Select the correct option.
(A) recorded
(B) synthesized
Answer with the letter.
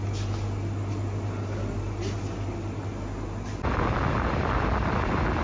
A